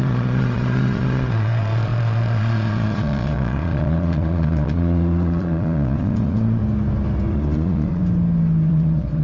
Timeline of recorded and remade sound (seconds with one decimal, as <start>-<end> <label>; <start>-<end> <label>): 0.0-6.6 remade; 6.6-7.3 recorded; 7.3-8.0 remade; 8.0-8.7 recorded; 8.7-9.2 remade